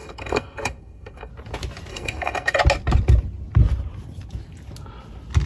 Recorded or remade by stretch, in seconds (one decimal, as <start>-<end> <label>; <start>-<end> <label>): 0.0-1.3 remade; 1.3-1.9 recorded; 1.9-2.6 remade; 2.6-5.5 recorded